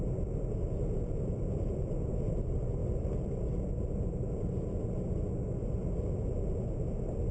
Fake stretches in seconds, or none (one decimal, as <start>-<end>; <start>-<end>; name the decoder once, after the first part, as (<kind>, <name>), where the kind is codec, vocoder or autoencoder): none